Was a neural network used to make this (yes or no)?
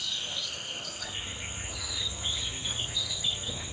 yes